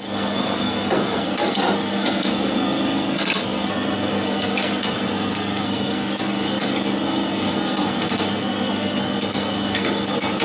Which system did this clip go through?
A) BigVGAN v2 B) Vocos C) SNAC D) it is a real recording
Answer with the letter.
C